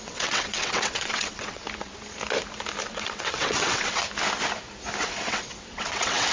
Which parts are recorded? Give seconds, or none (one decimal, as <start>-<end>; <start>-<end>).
1.6-2.9; 4.0-5.0